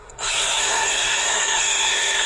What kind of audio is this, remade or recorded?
remade